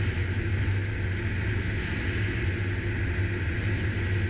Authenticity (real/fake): real